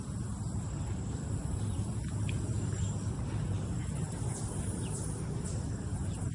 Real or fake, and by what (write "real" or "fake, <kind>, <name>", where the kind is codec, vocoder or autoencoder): real